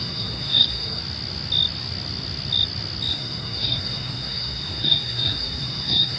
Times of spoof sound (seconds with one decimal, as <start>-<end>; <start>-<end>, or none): 0.0-1.0; 3.1-6.2